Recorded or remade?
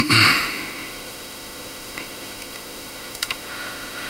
remade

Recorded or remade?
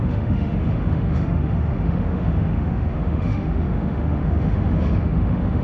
remade